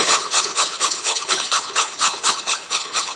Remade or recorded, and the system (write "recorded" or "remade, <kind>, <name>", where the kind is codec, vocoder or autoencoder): remade, codec, HILCodec